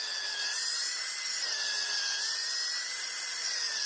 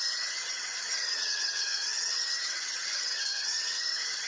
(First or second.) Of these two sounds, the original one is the first